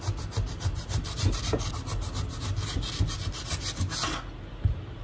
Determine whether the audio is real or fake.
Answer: real